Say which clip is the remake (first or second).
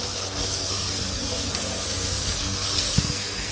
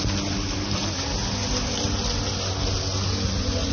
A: first